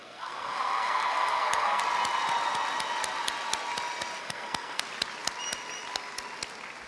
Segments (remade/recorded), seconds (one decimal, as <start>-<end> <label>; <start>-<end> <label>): 0.0-1.8 remade; 1.8-4.2 recorded; 4.2-4.8 remade; 4.8-6.9 recorded